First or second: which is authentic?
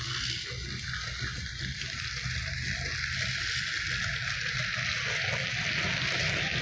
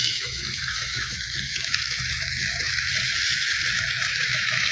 first